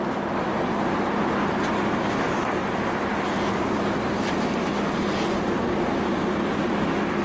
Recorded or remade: recorded